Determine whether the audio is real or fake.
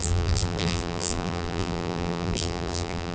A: fake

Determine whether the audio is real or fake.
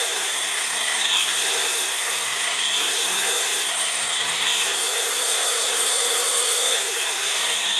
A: fake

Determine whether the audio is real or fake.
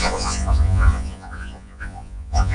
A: fake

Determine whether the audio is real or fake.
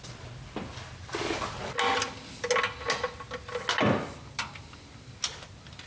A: real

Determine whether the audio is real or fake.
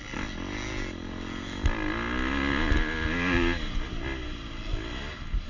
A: real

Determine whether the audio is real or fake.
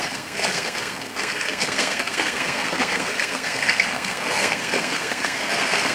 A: fake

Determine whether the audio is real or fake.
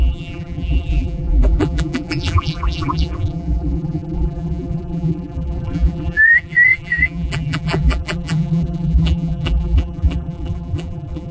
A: fake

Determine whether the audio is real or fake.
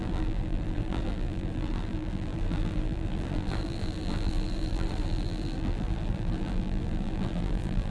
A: fake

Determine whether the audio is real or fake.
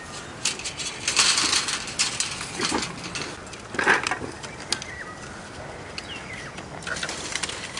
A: real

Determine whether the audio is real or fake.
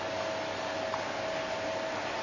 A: real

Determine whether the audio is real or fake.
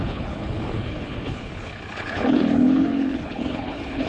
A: fake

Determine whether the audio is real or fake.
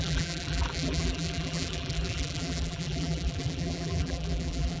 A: fake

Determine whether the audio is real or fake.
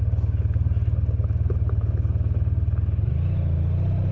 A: real